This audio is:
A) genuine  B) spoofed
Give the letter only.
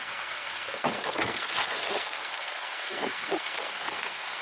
B